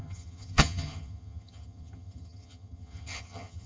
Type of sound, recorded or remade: remade